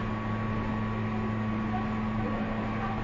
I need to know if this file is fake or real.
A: real